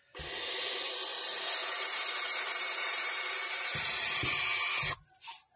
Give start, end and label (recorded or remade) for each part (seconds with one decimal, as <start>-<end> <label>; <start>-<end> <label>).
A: 0.0-1.1 recorded; 1.1-4.4 remade; 4.4-5.6 recorded